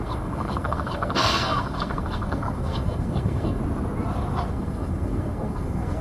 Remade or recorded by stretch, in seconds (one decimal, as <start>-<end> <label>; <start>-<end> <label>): 0.0-3.6 remade; 3.6-4.5 recorded; 4.5-6.0 remade

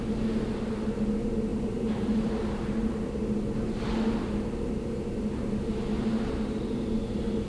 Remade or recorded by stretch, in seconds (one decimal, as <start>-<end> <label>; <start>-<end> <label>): 0.0-1.5 recorded; 1.5-2.3 remade; 2.3-7.5 recorded

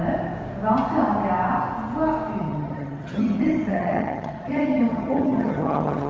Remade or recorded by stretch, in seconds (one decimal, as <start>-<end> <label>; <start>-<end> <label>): 0.0-2.4 recorded; 2.4-6.1 remade

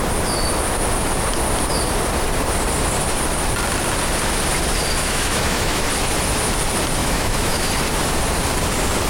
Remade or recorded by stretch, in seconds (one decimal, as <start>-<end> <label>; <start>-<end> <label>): 0.0-5.0 recorded; 5.0-5.8 remade; 5.8-7.0 recorded; 7.0-7.7 remade; 7.7-9.1 recorded

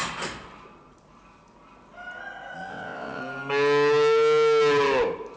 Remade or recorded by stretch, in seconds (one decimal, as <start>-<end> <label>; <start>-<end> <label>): 0.0-2.7 recorded; 2.7-3.2 remade; 3.2-5.4 recorded

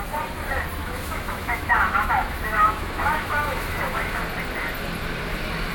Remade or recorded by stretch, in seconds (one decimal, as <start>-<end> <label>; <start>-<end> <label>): 0.0-0.8 recorded; 0.8-4.2 remade; 4.2-5.7 recorded

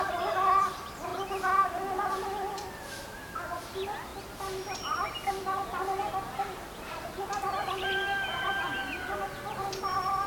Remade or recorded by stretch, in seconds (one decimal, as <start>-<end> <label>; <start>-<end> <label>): 0.0-10.3 recorded